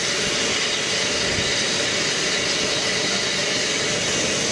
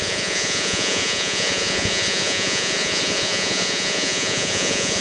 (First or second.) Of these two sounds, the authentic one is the first